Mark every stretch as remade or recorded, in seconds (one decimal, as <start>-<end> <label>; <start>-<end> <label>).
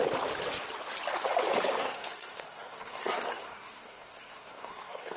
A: 0.0-1.8 recorded; 1.8-5.2 remade